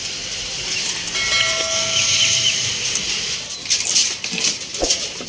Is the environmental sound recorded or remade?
recorded